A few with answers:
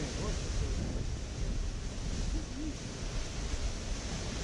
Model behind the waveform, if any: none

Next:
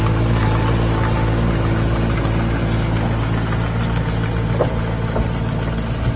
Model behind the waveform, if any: none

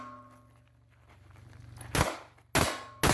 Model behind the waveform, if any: none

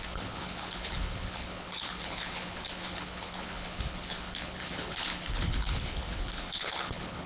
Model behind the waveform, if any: codec, HILCodec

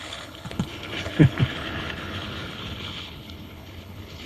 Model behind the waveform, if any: codec, HILCodec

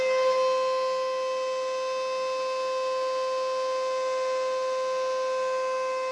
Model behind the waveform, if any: none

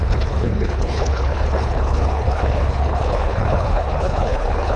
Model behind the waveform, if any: codec, HILCodec